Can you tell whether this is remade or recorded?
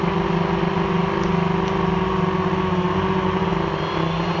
recorded